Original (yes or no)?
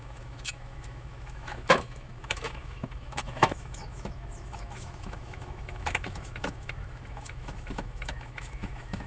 no